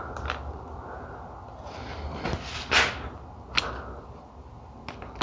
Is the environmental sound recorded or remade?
recorded